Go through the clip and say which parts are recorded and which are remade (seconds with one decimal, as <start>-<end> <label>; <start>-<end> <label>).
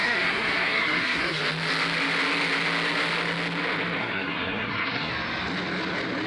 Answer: 0.0-1.4 remade; 1.4-4.0 recorded; 4.0-5.1 remade; 5.1-6.3 recorded